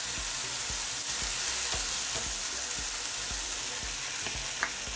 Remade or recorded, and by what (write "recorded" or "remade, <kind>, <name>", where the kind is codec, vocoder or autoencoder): recorded